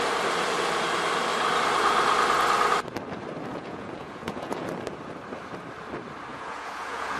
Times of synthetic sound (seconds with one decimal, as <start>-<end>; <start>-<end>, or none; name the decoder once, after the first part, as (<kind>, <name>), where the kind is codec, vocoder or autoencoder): 3.5-4.7 (vocoder, Vocos); 6.3-7.2